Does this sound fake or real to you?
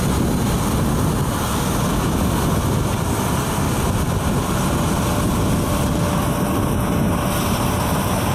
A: real